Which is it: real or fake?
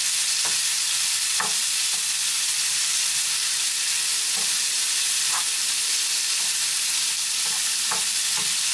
fake